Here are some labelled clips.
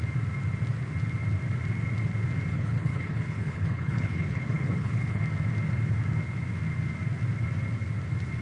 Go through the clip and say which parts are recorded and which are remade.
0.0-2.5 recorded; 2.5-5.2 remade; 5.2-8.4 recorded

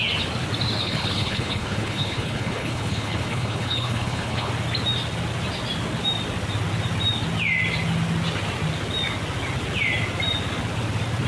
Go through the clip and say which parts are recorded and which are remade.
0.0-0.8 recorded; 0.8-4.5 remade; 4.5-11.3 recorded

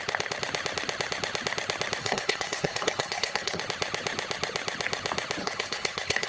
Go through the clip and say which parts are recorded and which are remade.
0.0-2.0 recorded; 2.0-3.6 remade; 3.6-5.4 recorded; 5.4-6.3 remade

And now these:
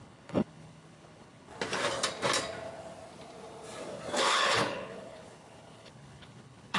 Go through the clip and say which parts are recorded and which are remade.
0.0-1.5 remade; 1.5-4.2 recorded; 4.2-6.8 remade

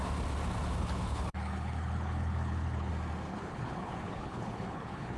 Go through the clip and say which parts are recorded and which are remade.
0.0-0.8 recorded; 0.8-2.9 remade; 2.9-3.3 recorded; 3.3-5.2 remade

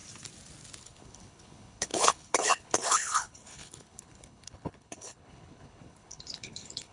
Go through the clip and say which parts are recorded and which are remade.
0.0-0.8 recorded; 0.8-6.9 remade

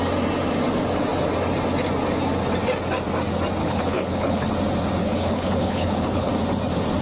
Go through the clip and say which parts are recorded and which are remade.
0.0-3.6 recorded; 3.6-4.5 remade; 4.5-5.0 recorded; 5.0-6.3 remade; 6.3-7.0 recorded

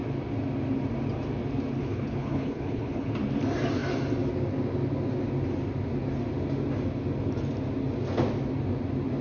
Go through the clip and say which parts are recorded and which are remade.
0.0-1.8 recorded; 1.8-3.1 remade; 3.1-9.2 recorded